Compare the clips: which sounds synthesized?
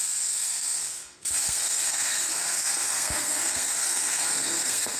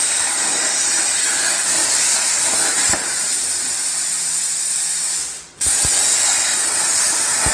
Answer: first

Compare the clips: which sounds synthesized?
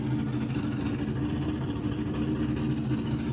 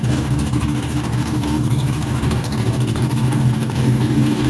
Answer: second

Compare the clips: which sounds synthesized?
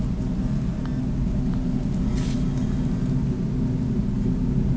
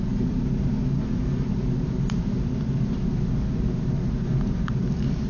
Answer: second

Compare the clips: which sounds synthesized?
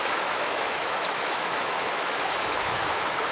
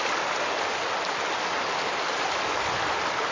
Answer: first